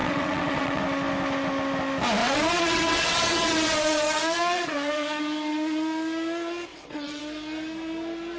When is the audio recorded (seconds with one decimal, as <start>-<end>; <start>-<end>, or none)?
0.8-2.2; 5.2-6.7; 7.2-8.4